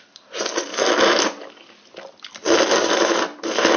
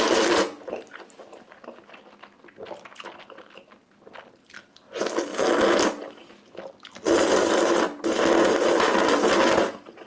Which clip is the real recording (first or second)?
second